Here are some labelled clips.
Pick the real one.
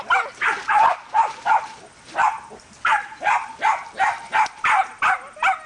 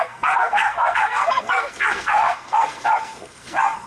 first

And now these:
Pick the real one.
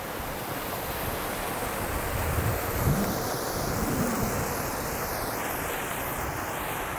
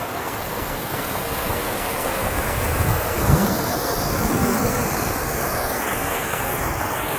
first